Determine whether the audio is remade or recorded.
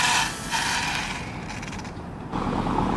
recorded